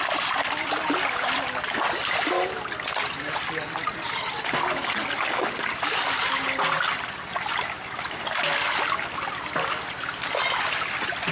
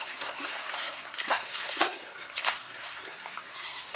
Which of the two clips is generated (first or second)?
second